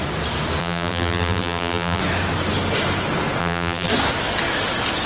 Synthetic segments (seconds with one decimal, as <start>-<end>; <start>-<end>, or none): 0.6-2.0; 3.4-3.9